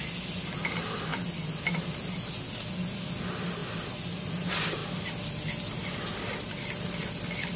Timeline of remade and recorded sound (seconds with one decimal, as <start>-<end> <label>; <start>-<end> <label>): 0.0-7.6 recorded